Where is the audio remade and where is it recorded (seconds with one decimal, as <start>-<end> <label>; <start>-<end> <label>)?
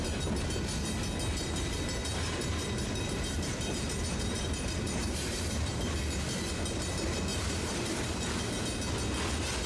0.0-2.0 recorded; 2.0-6.0 remade; 6.0-7.3 recorded; 7.3-8.4 remade; 8.4-9.7 recorded